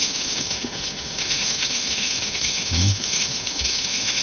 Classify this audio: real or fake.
fake